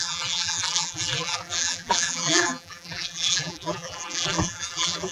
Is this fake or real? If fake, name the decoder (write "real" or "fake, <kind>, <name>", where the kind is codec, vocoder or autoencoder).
fake, vocoder, BigVGAN v2